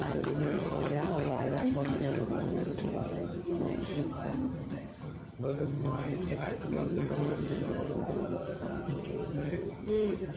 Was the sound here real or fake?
fake